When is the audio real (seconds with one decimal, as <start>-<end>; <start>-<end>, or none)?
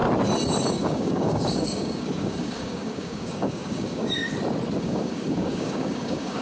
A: 0.0-0.7; 4.2-4.8